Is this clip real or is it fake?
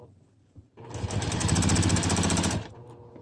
fake